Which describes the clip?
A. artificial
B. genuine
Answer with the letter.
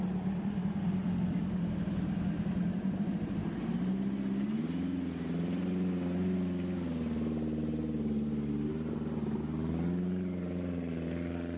B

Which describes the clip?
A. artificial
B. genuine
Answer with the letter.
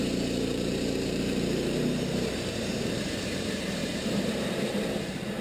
A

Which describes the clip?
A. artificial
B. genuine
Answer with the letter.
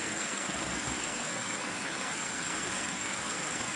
A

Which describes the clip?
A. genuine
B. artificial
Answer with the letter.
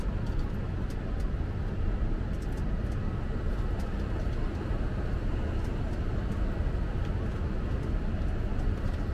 A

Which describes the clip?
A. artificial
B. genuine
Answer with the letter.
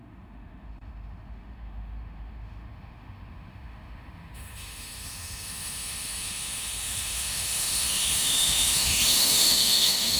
A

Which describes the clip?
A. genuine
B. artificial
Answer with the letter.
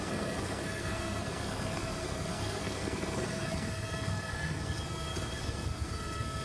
B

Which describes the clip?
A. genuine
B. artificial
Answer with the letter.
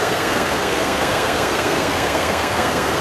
B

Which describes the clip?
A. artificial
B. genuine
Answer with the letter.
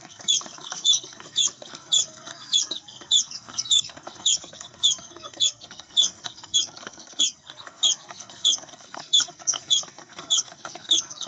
A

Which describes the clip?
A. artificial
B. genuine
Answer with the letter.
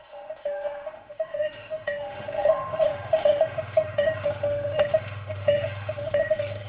A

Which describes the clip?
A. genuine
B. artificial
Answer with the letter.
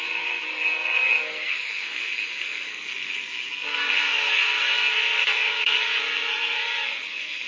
B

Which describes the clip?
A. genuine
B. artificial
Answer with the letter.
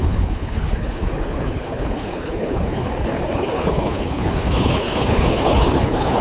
B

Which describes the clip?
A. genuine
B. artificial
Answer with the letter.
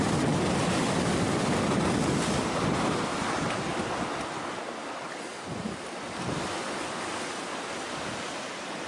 A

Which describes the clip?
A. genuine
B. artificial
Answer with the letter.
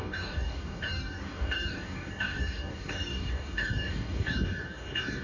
B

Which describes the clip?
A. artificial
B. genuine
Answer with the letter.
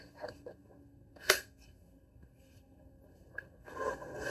A